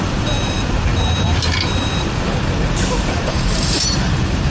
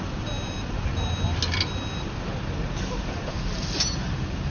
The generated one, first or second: first